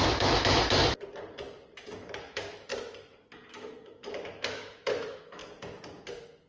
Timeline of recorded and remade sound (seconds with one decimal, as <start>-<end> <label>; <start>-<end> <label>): 0.0-0.8 remade; 0.8-2.2 recorded; 2.2-2.7 remade; 2.7-3.5 recorded; 3.5-5.4 remade; 5.4-6.5 recorded